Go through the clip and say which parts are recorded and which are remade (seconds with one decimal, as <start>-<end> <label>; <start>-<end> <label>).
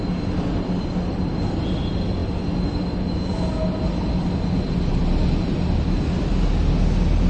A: 0.0-7.3 recorded